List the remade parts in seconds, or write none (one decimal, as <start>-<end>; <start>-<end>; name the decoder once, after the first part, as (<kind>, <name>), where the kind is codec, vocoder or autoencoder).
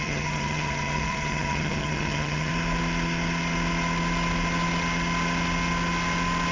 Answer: 0.0-2.5 (vocoder, HiFi-GAN)